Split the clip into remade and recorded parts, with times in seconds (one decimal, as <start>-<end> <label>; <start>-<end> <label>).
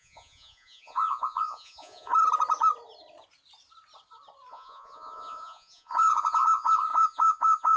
0.0-2.1 remade; 2.1-4.5 recorded; 4.5-7.8 remade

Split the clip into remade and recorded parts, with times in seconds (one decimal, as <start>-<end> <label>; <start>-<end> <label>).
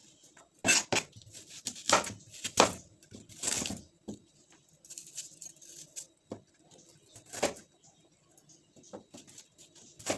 0.0-10.2 recorded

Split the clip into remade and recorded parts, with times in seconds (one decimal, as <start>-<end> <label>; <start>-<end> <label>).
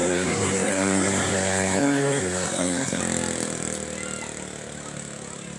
0.0-3.0 remade; 3.0-5.6 recorded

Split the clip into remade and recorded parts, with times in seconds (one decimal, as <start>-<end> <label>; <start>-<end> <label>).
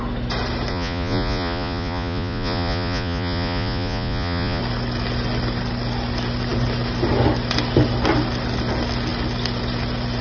0.0-0.7 recorded; 0.7-4.6 remade; 4.6-10.2 recorded